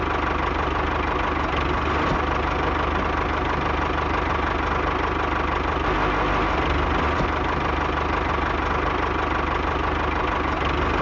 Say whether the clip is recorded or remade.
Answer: recorded